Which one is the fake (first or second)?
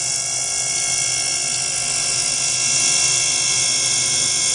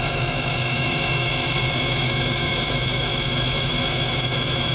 second